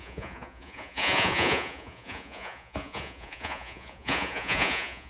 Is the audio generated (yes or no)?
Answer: yes